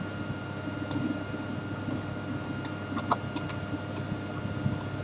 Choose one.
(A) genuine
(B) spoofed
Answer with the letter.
A